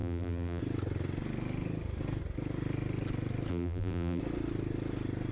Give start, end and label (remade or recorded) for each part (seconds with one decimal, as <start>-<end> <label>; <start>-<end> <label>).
0.0-0.6 remade; 0.6-3.5 recorded; 3.5-4.2 remade; 4.2-5.3 recorded